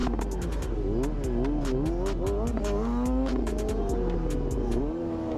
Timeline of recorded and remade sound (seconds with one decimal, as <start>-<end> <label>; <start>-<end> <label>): 0.0-2.6 recorded; 2.6-3.5 remade; 3.5-4.8 recorded; 4.8-5.4 remade